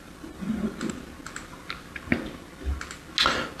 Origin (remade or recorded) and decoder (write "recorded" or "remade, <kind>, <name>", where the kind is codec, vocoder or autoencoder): recorded